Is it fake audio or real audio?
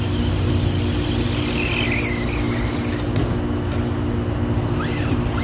real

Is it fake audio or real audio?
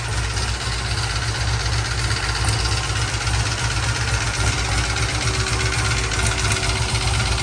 real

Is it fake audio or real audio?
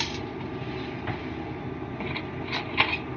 real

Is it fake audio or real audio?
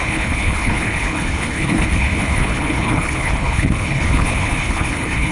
fake